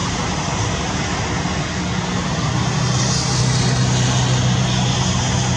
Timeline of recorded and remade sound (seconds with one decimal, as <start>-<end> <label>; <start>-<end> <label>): 0.0-5.6 recorded